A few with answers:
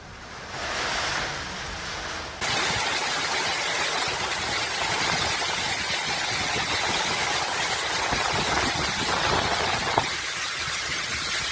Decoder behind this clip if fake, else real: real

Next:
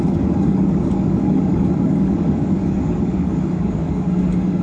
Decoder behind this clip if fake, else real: fake, codec, DAC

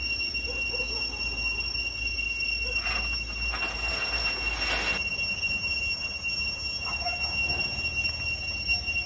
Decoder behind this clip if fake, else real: real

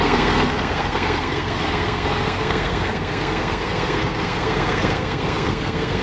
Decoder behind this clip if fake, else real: fake, codec, SNAC